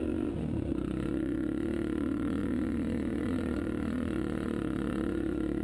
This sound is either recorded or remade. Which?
remade